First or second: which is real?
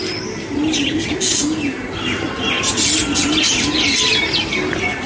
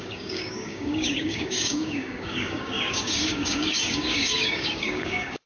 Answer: first